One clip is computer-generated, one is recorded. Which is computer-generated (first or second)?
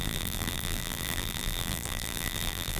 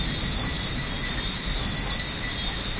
first